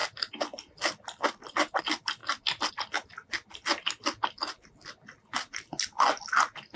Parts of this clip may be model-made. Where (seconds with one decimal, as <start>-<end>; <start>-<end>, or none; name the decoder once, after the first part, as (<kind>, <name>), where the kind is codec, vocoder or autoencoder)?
none